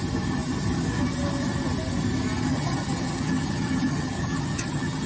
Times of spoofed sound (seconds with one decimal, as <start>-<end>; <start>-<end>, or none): 2.5-5.1